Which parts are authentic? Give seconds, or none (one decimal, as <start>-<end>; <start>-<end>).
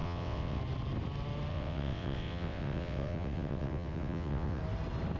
0.6-1.5; 4.6-5.2